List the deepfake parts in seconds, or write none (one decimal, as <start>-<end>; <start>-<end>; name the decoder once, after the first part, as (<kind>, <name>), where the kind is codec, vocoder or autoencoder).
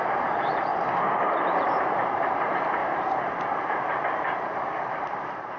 0.0-0.7 (vocoder, BigVGAN v2); 1.5-5.6